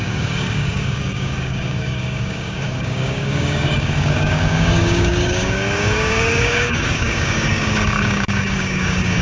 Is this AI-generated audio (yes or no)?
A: yes